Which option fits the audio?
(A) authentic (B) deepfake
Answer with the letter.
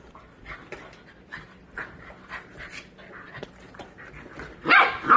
A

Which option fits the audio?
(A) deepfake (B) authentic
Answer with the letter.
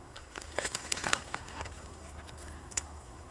A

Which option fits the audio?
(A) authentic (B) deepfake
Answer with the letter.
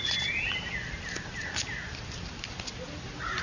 A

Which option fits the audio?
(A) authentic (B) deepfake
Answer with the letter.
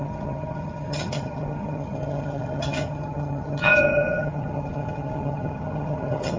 B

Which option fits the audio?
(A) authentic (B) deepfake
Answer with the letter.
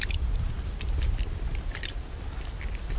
B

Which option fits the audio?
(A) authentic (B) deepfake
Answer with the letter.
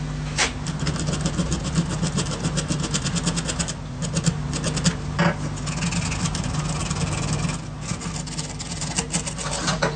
A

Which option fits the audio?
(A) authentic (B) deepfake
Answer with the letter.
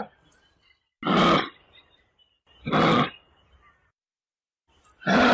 A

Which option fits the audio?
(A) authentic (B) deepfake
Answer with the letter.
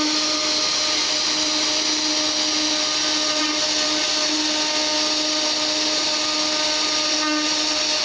A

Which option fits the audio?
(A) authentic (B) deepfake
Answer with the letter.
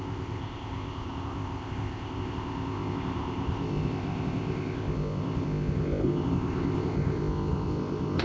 B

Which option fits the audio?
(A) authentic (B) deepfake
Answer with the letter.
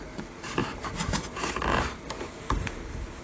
B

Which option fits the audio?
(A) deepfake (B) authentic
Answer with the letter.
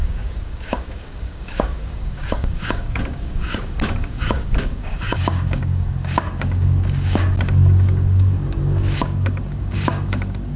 A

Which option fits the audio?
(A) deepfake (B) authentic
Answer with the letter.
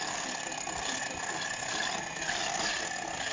B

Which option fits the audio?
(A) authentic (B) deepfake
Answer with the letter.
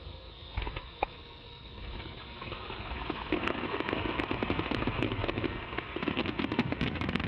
B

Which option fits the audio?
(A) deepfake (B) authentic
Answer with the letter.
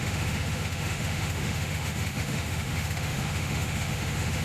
A